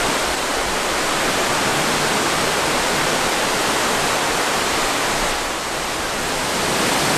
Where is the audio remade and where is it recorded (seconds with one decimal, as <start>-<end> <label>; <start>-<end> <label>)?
0.0-7.2 recorded